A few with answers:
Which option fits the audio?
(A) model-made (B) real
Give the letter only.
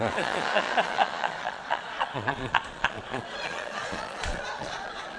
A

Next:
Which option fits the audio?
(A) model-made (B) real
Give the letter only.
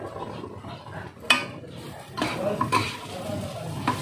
B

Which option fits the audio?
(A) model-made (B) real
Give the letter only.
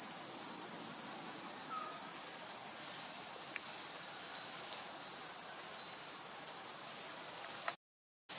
B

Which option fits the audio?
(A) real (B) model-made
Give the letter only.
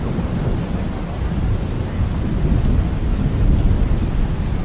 A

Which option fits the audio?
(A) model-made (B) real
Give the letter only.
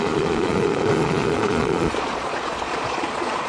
A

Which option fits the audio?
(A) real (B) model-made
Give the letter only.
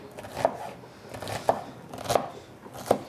A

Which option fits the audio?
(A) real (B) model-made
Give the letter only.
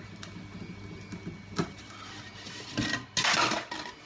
A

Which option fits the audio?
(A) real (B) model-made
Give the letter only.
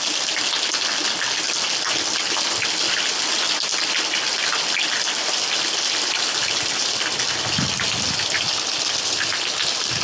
A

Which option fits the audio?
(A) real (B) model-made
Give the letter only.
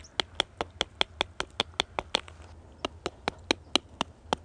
A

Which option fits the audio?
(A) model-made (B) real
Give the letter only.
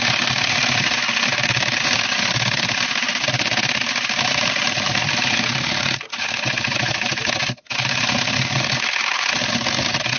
B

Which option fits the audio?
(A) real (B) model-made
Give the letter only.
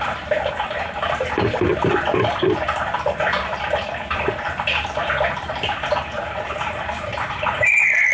B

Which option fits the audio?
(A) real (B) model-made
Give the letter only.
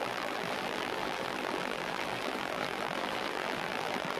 B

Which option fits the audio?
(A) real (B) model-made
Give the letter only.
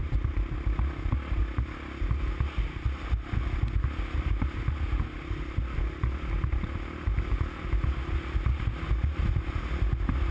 A